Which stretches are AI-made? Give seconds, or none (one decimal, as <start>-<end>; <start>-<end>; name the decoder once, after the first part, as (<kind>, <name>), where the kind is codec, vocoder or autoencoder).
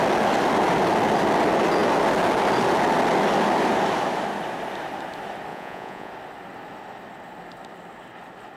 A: 5.5-6.1 (vocoder, Vocos)